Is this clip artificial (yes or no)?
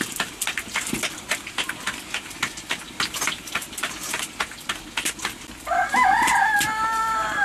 no